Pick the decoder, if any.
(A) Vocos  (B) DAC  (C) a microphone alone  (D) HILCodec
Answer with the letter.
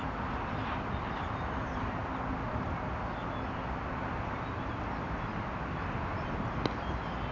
C